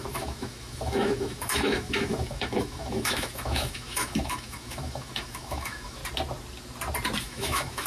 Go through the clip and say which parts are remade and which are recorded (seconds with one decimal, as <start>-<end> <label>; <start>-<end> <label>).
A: 0.0-6.0 remade; 6.0-7.2 recorded; 7.2-7.9 remade